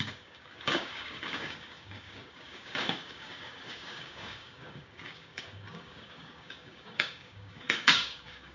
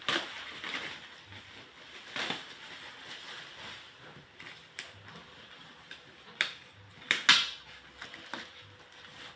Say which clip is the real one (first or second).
second